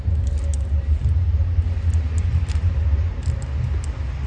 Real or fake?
real